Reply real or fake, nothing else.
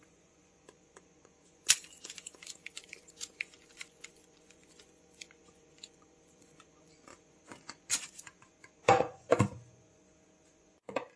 fake